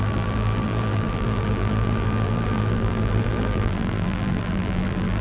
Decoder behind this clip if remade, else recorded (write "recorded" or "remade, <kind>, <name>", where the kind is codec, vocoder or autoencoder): remade, vocoder, BigVGAN v2